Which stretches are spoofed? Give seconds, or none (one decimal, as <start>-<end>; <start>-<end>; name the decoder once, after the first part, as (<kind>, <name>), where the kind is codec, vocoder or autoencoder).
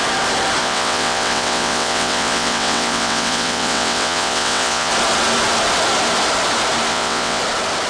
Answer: 0.6-4.9 (vocoder, WaveNeXt); 6.9-7.4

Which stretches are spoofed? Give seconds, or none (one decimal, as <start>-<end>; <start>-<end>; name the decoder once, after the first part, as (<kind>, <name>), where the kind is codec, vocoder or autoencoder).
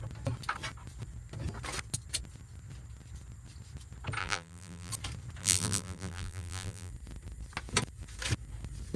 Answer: 4.2-4.9 (vocoder, BigVGAN v2); 5.4-6.9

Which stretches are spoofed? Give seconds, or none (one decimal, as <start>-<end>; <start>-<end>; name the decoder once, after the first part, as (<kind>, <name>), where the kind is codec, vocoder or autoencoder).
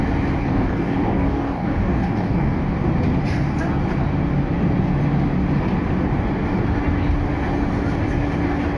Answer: 0.4-2.6 (codec, DAC)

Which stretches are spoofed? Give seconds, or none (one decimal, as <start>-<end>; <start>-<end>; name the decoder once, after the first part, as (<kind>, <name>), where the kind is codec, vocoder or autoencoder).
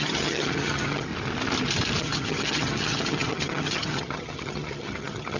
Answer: 0.0-1.1 (vocoder, HiFi-GAN); 2.0-5.4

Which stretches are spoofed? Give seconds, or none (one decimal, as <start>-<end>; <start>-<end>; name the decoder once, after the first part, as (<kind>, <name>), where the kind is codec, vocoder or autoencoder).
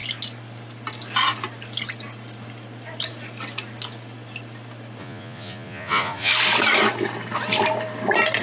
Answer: 5.0-6.3 (vocoder, Vocos)